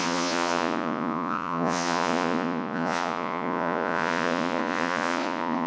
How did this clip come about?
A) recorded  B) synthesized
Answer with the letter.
B